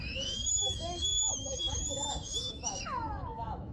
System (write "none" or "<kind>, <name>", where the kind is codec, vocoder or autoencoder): autoencoder, DAC-VAE